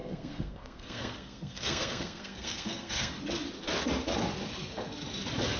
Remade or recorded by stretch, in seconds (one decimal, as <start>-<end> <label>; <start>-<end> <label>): 0.0-3.1 remade; 3.1-5.6 recorded